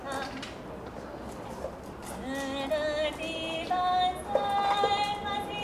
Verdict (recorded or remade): recorded